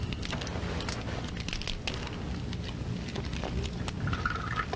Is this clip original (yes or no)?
yes